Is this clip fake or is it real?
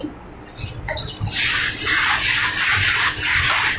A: real